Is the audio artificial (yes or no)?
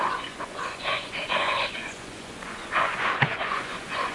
yes